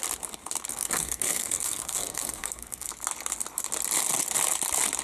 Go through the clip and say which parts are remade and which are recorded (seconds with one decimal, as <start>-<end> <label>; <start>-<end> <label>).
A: 0.0-0.7 recorded; 0.7-2.9 remade; 2.9-5.0 recorded